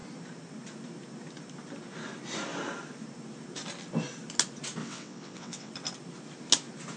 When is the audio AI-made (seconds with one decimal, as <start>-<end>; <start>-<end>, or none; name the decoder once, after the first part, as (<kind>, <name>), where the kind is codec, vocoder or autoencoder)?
4.8-5.7 (vocoder, WaveNeXt)